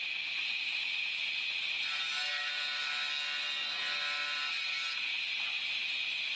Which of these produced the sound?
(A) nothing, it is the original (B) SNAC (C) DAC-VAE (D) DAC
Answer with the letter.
A